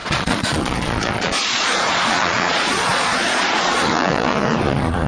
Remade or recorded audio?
remade